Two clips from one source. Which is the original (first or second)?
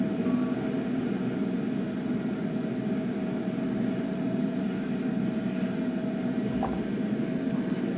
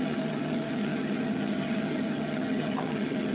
first